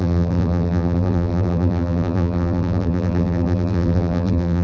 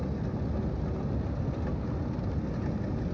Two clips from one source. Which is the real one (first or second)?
second